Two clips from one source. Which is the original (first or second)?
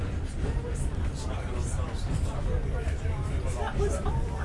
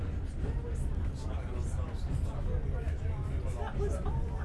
second